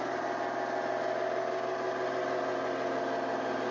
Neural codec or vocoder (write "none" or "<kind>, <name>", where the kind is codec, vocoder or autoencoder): none